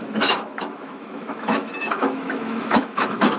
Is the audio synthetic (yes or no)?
yes